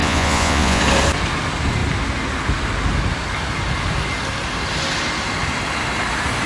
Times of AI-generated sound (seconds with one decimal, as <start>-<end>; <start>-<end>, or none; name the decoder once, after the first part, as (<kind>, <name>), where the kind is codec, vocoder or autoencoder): 0.0-0.8 (vocoder, Vocos)